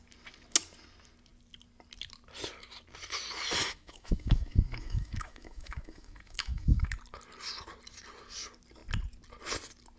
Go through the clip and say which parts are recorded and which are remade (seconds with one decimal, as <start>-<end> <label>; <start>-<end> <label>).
0.0-3.6 recorded; 3.6-6.9 remade; 6.9-10.0 recorded